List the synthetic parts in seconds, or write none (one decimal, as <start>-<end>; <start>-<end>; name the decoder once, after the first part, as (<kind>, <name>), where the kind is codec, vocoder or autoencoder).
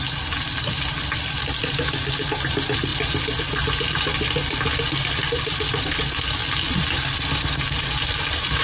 none